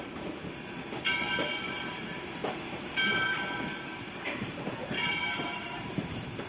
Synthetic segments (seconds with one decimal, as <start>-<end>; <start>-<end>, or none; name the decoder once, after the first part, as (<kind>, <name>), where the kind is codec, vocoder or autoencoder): 0.0-0.4 (vocoder, BigVGAN v2); 1.7-6.5